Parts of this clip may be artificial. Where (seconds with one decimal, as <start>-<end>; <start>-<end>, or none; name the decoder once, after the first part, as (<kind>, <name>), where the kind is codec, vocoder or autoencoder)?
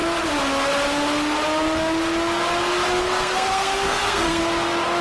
3.0-4.4 (codec, SNAC)